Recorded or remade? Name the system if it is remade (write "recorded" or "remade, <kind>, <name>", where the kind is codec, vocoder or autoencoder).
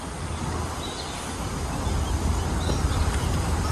recorded